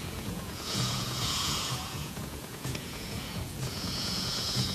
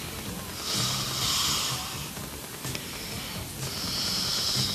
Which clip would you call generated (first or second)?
first